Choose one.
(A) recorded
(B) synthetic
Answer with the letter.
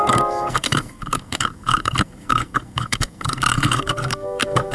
B